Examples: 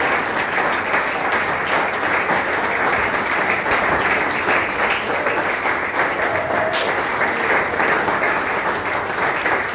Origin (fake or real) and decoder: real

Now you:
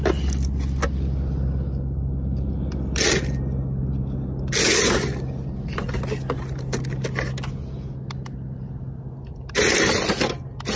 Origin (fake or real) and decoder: real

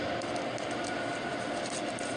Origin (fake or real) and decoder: real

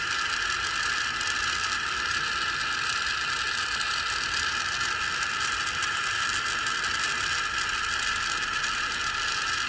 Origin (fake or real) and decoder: real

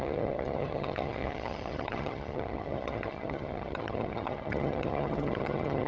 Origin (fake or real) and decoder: fake, vocoder, HiFi-GAN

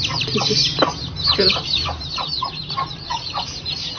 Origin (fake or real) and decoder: fake, vocoder, BigVGAN v2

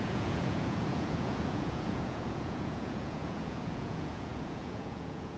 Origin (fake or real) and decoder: fake, vocoder, Vocos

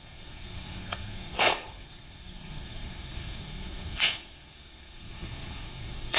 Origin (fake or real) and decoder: fake, codec, SNAC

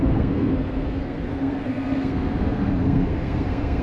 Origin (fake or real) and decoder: fake, codec, SNAC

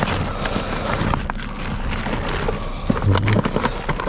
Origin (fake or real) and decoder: real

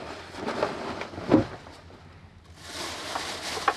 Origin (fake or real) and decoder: real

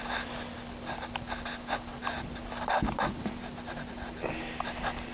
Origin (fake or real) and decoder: real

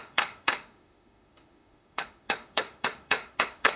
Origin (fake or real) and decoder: fake, autoencoder, DAC-VAE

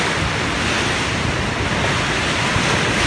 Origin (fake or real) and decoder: real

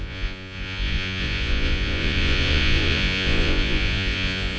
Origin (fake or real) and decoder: fake, vocoder, Vocos